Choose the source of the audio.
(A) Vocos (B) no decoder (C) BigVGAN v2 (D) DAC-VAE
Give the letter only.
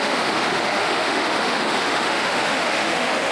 D